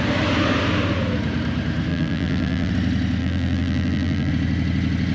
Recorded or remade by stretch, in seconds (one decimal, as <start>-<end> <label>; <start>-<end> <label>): 0.0-1.9 recorded; 1.9-2.7 remade; 2.7-3.2 recorded; 3.2-4.3 remade; 4.3-5.1 recorded

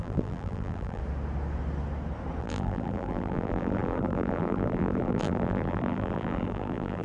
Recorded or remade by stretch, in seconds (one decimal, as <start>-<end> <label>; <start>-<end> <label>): 0.0-1.0 remade; 1.0-2.4 recorded; 2.4-7.0 remade

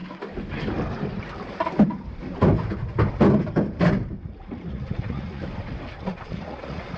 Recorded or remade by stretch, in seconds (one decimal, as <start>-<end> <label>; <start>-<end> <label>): 0.0-4.2 recorded; 4.2-5.4 remade; 5.4-6.0 recorded; 6.0-7.0 remade

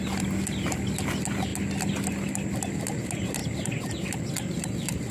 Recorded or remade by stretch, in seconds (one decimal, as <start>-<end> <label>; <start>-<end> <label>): 0.0-5.1 recorded